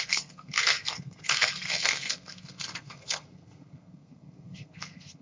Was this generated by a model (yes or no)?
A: yes